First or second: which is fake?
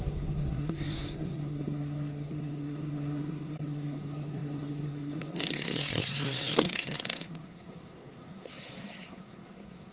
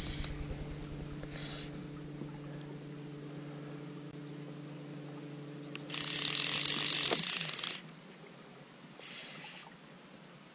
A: first